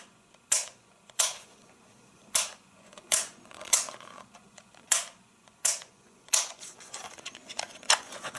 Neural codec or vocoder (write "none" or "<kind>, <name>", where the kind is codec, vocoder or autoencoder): vocoder, Vocos